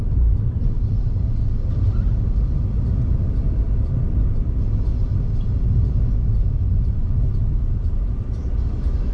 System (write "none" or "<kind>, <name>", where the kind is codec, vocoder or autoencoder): vocoder, BigVGAN v2